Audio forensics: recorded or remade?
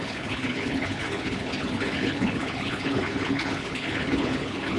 remade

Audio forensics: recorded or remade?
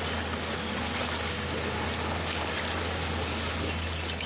recorded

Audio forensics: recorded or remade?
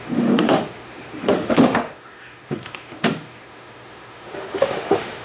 remade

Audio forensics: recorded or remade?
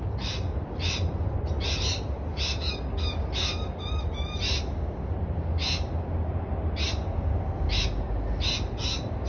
recorded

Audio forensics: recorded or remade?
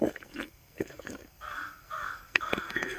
remade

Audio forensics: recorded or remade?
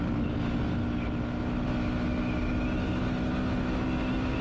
recorded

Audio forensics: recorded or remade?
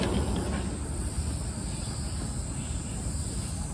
recorded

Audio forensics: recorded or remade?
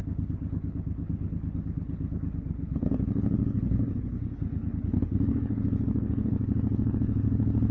remade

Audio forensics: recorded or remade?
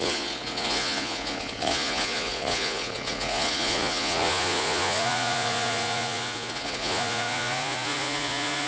remade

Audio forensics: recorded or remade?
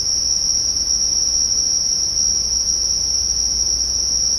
recorded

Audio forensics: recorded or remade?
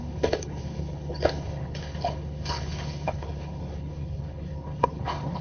remade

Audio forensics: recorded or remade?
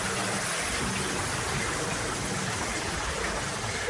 recorded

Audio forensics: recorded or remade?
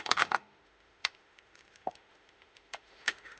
remade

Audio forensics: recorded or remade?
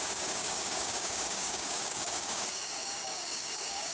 remade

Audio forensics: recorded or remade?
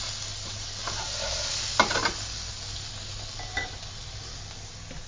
recorded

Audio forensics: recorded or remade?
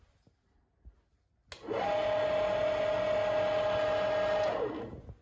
recorded